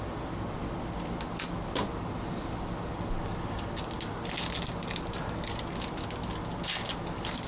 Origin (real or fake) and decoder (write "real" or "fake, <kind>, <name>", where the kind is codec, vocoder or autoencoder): real